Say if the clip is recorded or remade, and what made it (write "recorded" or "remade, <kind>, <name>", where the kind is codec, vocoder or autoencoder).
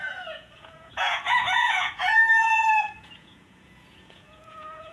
remade, vocoder, Vocos